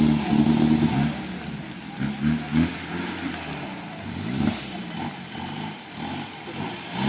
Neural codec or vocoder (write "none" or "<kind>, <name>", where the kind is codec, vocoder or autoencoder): none